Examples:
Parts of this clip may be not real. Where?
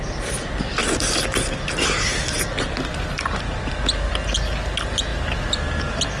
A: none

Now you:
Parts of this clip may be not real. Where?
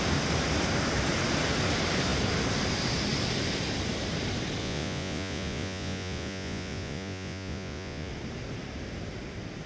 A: 4.6-8.1 (vocoder, Vocos)